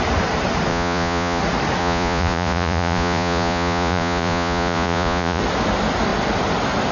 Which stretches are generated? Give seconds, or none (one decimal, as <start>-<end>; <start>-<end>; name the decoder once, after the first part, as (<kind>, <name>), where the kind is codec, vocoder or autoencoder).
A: 0.7-1.4 (vocoder, Vocos); 1.8-5.4